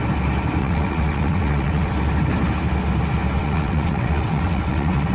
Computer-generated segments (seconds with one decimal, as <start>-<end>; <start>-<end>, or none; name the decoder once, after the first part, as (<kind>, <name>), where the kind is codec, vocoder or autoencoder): 0.6-1.9 (vocoder, WaveNeXt); 3.4-5.1